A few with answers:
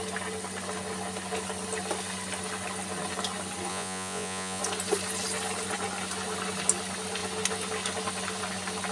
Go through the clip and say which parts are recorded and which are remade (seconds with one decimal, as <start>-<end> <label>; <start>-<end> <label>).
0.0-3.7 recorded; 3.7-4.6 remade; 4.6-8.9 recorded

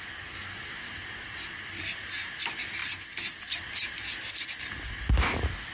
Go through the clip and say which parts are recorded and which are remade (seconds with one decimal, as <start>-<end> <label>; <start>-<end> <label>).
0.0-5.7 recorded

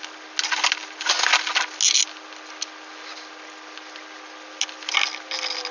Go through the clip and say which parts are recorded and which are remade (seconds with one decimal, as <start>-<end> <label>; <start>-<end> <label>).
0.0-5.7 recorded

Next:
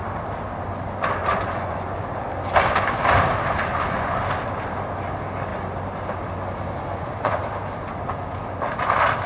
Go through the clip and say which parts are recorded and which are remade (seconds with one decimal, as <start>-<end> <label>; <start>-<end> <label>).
0.0-1.2 recorded; 1.2-2.0 remade; 2.0-3.7 recorded; 3.7-4.2 remade; 4.2-6.9 recorded; 6.9-7.4 remade; 7.4-9.3 recorded